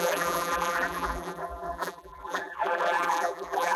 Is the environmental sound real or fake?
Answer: fake